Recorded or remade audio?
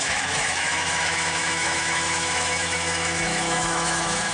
remade